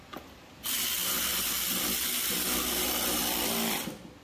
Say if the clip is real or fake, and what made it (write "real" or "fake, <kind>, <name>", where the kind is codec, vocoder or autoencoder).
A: real